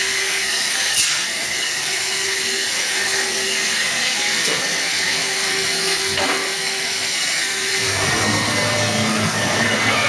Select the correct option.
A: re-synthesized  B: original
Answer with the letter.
A